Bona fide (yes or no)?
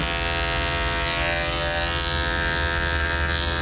yes